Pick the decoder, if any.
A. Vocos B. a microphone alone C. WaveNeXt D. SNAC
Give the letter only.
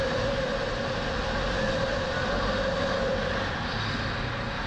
B